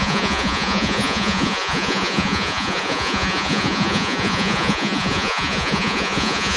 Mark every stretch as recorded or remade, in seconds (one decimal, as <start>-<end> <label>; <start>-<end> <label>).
0.0-6.6 remade